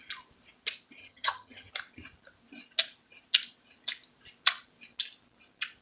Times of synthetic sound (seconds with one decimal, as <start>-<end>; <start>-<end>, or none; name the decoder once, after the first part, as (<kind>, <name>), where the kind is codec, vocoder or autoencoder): 1.0-1.7 (vocoder, HiFi-GAN)